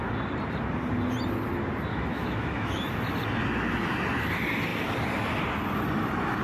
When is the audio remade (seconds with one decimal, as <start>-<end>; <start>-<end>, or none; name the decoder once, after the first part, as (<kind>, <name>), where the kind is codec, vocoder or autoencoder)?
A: 1.9-2.9 (autoencoder, DAC-VAE)